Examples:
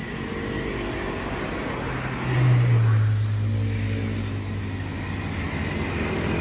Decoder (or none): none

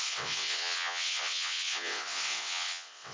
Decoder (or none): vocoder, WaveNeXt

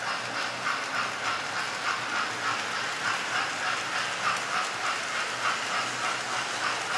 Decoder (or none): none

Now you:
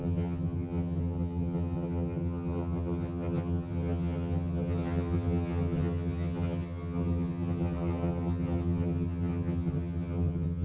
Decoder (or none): vocoder, HiFi-GAN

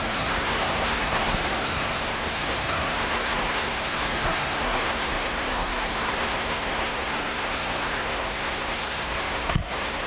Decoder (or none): codec, SNAC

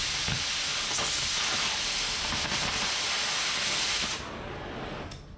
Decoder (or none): none